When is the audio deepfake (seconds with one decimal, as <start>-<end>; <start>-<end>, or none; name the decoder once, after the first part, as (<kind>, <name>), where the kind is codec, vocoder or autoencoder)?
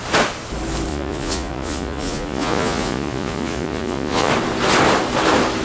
0.9-4.3 (vocoder, Vocos)